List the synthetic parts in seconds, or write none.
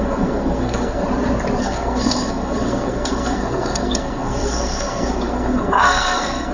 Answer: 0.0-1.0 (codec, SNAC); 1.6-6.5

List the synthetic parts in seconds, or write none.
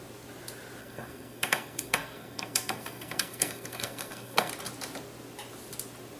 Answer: 0.8-4.5 (codec, SNAC)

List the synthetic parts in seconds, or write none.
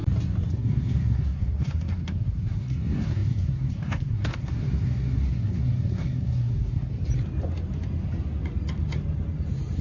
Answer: 0.5-6.9 (codec, SNAC)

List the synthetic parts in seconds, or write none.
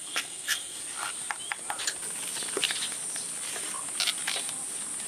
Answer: 0.0-0.8 (codec, SNAC)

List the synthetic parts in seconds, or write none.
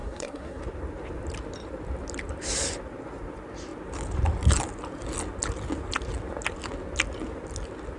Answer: 0.0-0.6 (codec, SNAC)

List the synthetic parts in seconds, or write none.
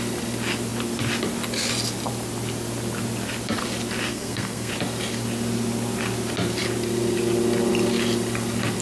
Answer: 4.1-4.7 (codec, SNAC)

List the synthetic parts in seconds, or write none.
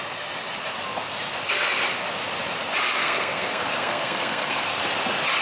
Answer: 3.0-4.8 (codec, SNAC)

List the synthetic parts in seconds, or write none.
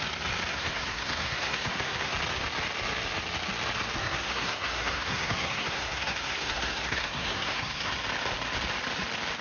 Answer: 0.5-2.1 (codec, SNAC); 4.0-7.9